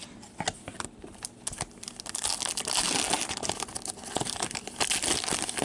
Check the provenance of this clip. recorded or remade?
recorded